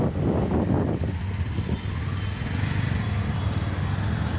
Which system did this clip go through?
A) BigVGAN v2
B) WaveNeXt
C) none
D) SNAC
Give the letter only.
C